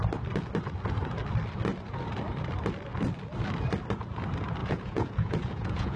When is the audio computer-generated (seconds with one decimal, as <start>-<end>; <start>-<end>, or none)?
4.6-6.0